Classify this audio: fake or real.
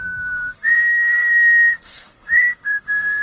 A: fake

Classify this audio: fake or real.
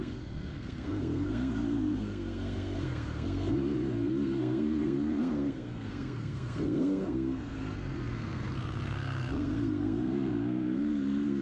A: fake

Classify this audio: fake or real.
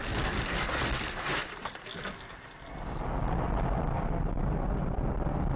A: real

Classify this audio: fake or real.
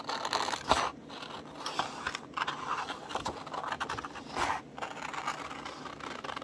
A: real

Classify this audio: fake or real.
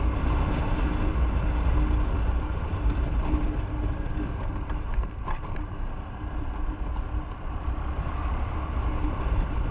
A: real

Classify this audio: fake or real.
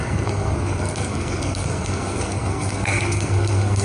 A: fake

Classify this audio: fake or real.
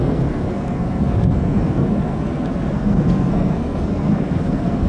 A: fake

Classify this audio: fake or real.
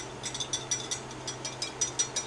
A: real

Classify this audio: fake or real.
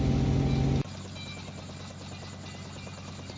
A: real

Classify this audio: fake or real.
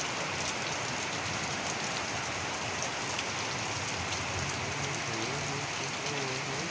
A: real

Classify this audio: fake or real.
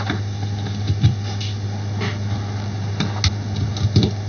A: real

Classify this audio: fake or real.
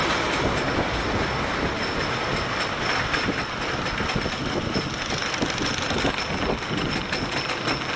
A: real